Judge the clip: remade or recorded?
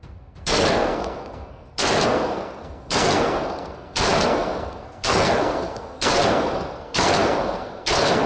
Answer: remade